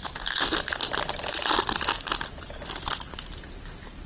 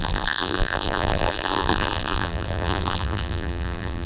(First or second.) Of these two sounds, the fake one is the second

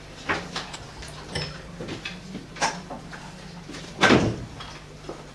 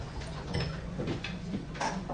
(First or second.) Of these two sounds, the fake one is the second